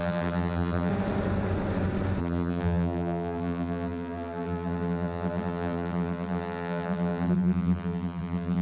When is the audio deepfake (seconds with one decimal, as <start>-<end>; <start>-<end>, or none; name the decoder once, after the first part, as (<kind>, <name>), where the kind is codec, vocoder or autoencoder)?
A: 0.0-0.9 (vocoder, BigVGAN v2); 2.2-8.6